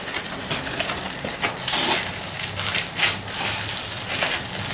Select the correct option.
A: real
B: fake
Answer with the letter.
A